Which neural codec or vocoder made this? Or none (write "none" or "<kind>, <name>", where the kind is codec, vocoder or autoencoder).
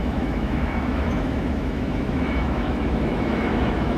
autoencoder, DAC-VAE